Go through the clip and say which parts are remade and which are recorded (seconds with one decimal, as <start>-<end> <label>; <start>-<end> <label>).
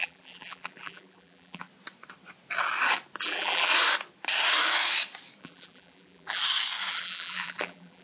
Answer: 0.0-1.7 remade; 1.7-3.2 recorded; 3.2-3.7 remade; 3.7-5.4 recorded; 5.4-6.4 remade; 6.4-6.9 recorded; 6.9-8.0 remade